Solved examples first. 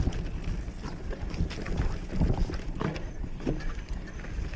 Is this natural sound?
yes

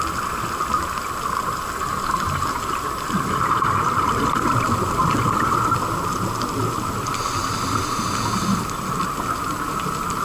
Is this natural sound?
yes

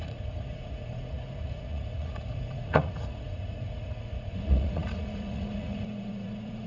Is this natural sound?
no